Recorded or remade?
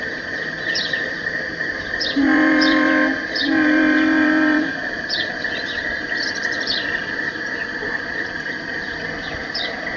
remade